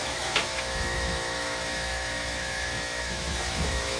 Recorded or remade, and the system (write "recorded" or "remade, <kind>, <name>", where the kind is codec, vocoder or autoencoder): remade, autoencoder, DAC-VAE